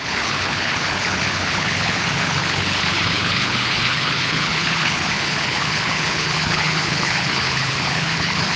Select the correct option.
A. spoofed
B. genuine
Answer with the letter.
A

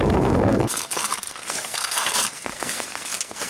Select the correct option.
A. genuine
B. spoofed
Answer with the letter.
B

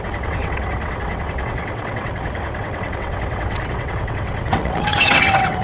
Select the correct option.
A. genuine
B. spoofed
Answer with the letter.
B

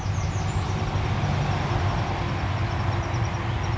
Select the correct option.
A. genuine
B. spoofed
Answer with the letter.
A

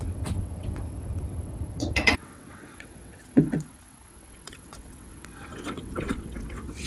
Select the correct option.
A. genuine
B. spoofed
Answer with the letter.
B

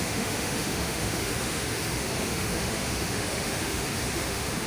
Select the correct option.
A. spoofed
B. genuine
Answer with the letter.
A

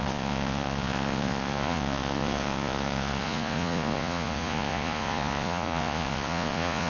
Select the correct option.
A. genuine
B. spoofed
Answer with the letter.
B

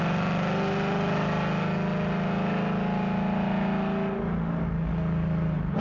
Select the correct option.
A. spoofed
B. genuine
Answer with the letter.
B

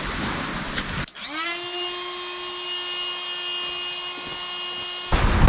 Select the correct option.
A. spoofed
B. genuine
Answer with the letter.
B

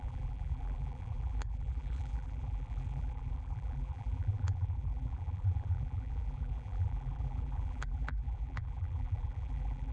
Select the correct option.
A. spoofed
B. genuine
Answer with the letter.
A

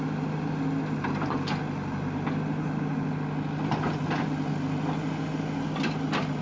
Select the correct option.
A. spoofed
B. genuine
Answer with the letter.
B